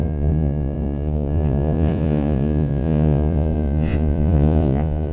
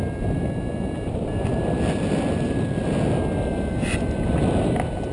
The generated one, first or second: first